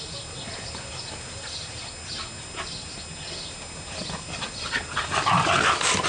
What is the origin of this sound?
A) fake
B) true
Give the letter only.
B